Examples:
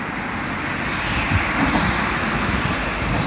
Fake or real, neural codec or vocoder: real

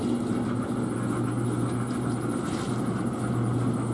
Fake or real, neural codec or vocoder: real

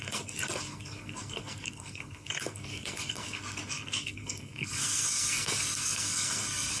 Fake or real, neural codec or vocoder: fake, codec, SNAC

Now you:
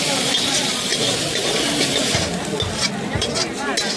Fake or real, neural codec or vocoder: real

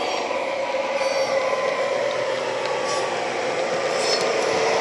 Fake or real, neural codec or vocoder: real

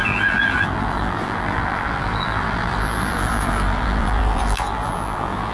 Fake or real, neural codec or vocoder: fake, vocoder, BigVGAN v2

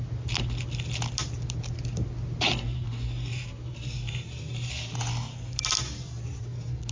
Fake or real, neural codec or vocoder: real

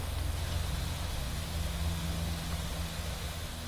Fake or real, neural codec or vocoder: real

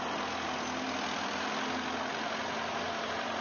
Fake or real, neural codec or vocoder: real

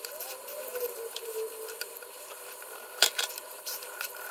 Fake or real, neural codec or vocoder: fake, vocoder, BigVGAN v2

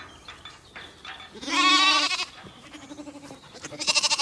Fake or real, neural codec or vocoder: real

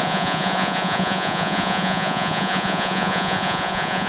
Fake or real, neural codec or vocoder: fake, vocoder, Vocos